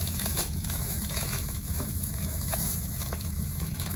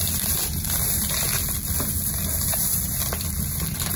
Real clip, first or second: second